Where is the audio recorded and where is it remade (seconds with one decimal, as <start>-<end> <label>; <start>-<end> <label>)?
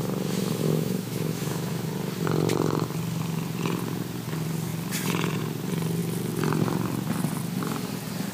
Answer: 0.0-0.4 recorded; 0.4-1.9 remade; 1.9-8.3 recorded